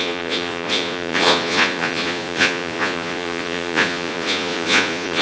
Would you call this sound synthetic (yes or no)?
yes